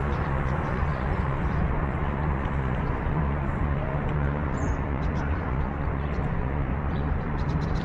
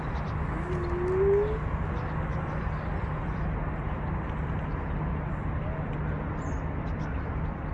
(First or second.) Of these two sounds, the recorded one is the second